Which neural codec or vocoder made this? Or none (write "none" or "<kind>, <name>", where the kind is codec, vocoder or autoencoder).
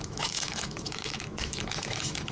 autoencoder, DAC-VAE